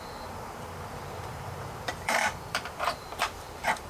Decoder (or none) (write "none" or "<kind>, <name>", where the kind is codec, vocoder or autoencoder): vocoder, BigVGAN v2